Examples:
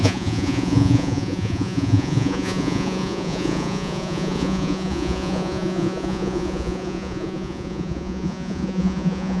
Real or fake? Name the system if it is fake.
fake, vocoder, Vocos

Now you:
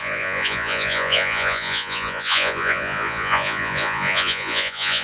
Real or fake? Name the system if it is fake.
fake, vocoder, Vocos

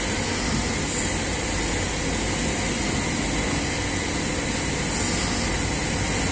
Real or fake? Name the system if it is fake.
real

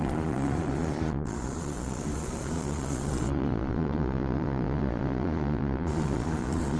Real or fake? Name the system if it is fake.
fake, vocoder, Vocos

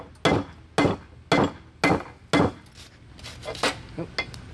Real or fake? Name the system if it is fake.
real